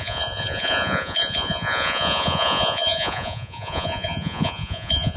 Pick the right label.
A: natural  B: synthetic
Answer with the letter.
B